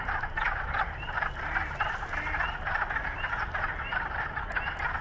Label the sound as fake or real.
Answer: real